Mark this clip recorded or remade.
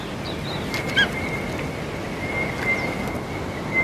recorded